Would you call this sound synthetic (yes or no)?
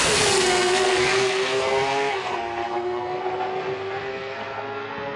yes